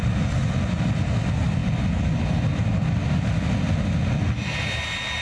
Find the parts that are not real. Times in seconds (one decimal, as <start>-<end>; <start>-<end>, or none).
none